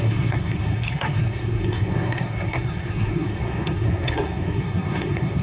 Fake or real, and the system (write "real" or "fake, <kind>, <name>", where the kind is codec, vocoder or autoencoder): fake, codec, SNAC